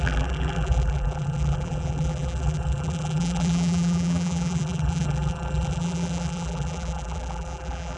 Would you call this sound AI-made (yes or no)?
yes